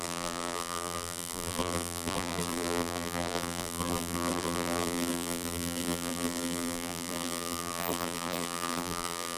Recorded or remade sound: remade